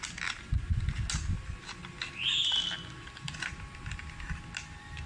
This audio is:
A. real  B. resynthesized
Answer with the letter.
A